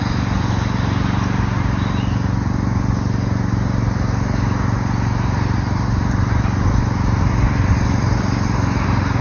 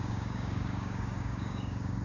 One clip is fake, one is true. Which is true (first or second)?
first